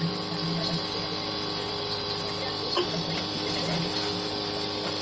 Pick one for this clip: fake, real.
real